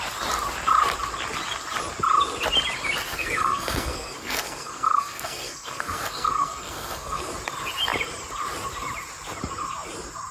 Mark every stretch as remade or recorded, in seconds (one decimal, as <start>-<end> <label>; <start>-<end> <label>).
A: 0.0-3.1 recorded; 3.1-7.3 remade; 7.3-10.3 recorded